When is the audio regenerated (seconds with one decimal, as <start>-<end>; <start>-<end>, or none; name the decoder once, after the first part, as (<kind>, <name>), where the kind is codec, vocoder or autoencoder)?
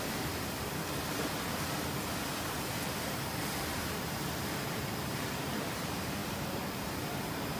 0.0-0.8 (vocoder, BigVGAN v2); 4.4-7.6